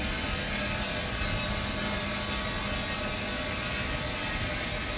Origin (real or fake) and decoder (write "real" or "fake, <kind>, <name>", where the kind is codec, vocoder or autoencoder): real